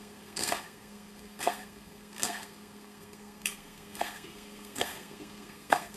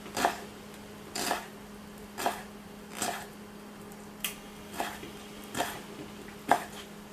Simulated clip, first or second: first